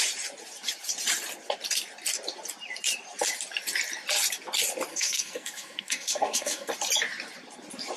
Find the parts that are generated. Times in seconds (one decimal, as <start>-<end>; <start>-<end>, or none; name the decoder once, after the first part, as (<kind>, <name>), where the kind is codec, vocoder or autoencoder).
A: 4.9-6.7 (codec, SNAC)